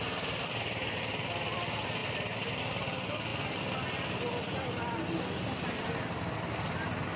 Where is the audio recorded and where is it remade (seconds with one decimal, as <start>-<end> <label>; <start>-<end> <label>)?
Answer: 0.0-7.2 recorded